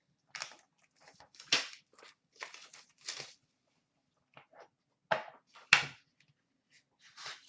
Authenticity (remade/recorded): recorded